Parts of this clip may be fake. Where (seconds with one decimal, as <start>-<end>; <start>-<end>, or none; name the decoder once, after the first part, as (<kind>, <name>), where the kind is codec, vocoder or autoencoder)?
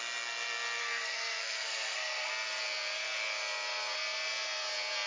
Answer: 0.8-2.3 (codec, SNAC)